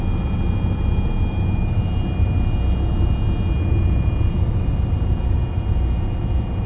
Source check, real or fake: real